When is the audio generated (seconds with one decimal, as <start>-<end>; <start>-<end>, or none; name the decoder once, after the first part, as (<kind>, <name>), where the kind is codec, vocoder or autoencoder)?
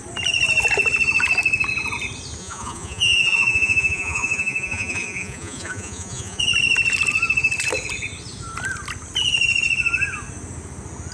2.4-6.4 (vocoder, Vocos)